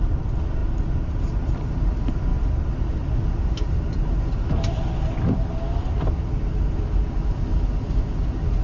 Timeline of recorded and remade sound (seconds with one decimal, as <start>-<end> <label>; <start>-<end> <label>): 0.0-8.6 recorded